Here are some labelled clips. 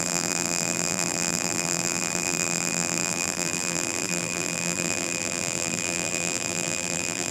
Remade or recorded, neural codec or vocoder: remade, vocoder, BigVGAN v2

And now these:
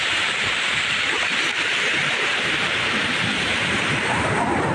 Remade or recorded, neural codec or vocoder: remade, vocoder, BigVGAN v2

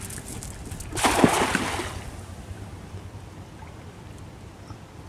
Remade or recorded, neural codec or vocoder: recorded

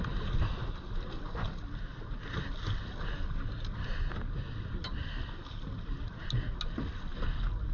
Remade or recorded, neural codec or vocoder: recorded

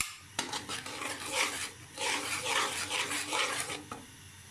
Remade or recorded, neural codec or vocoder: remade, vocoder, BigVGAN v2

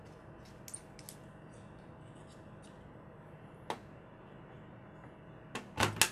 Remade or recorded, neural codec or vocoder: recorded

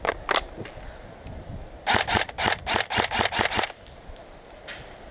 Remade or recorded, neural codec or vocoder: recorded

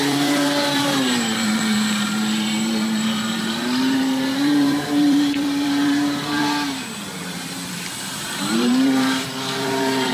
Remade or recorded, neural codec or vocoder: remade, vocoder, BigVGAN v2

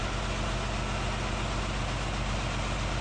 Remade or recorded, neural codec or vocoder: recorded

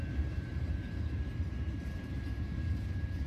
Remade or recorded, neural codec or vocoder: remade, vocoder, BigVGAN v2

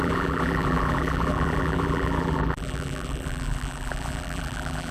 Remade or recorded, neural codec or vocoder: remade, vocoder, BigVGAN v2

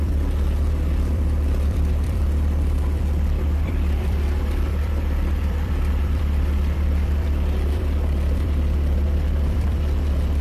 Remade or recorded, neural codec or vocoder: remade, vocoder, BigVGAN v2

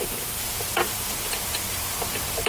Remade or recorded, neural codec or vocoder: recorded